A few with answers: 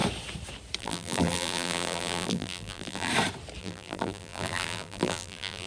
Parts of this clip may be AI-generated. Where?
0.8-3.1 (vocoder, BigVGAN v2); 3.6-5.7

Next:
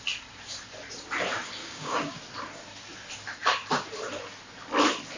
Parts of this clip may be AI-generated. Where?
1.6-2.2 (codec, DAC)

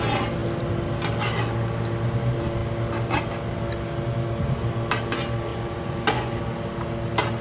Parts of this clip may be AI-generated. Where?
5.5-6.4 (vocoder, Vocos)

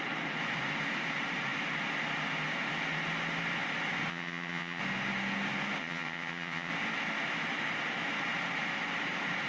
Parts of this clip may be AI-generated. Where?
4.1-4.8 (vocoder, HiFi-GAN); 5.8-6.7

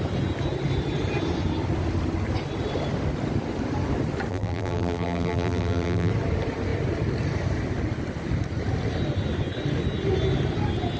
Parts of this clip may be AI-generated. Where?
4.3-6.1 (vocoder, BigVGAN v2)

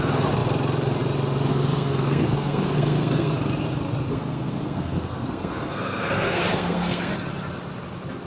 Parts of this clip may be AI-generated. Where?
1.5-3.3 (codec, SNAC); 4.1-7.1

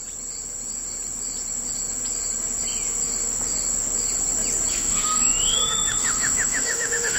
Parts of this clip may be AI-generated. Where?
4.7-7.2 (autoencoder, DAC-VAE)